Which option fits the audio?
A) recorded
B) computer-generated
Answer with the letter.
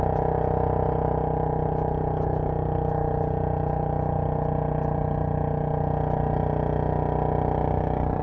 A